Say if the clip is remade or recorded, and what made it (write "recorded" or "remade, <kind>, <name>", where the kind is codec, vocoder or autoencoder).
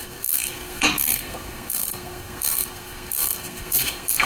remade, codec, SNAC